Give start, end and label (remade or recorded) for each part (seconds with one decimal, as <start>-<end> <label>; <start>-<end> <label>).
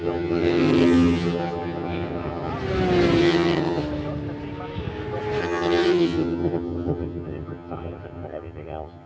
0.0-2.5 remade; 2.5-3.2 recorded; 3.2-3.8 remade; 3.8-5.4 recorded; 5.4-9.1 remade